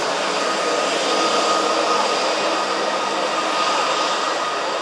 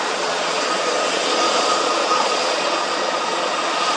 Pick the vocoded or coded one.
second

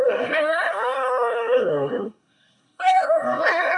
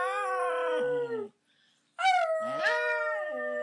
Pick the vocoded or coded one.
first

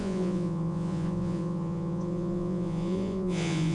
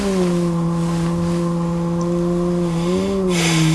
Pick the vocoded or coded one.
first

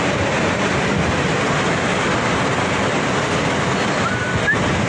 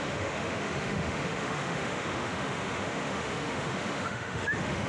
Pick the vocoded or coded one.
second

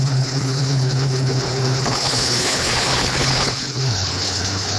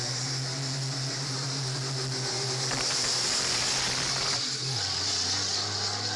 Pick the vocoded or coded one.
first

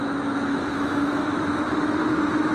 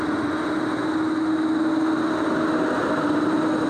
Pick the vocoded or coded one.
first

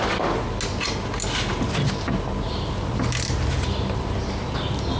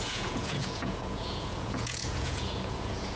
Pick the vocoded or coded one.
second